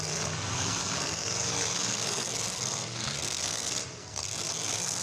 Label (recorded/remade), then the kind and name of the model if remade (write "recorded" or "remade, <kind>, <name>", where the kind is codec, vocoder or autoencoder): remade, codec, SNAC